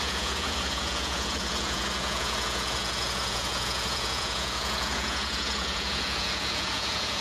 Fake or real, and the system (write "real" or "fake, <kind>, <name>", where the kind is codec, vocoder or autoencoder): fake, vocoder, Vocos